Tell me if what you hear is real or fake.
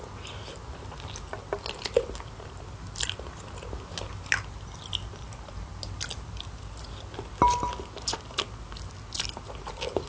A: real